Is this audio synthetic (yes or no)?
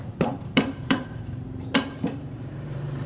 yes